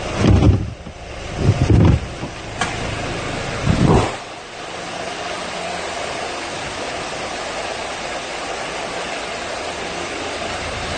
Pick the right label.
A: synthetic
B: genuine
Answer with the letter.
B